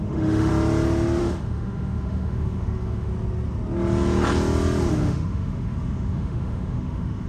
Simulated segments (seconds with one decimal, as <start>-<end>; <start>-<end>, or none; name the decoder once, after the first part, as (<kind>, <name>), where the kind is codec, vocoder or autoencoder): 0.0-0.5 (autoencoder, DAC-VAE); 1.2-3.1; 4.9-7.3